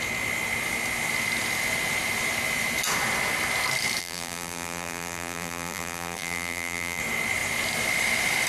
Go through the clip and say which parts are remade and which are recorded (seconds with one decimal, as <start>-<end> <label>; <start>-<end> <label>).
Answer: 0.0-4.0 recorded; 4.0-7.0 remade; 7.0-8.5 recorded